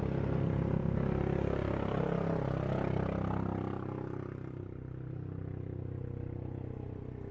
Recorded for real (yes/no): yes